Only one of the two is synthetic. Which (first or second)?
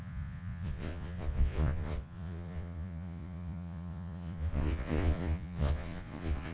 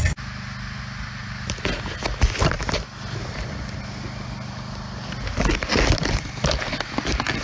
first